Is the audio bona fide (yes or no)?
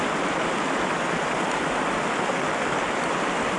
yes